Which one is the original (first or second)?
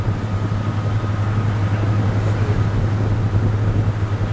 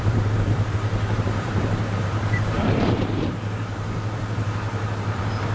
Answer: first